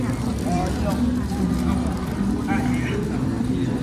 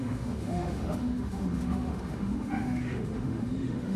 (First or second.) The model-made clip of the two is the second